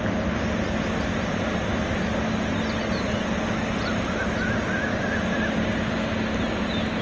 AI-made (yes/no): no